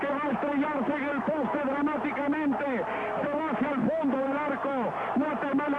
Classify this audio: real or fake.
real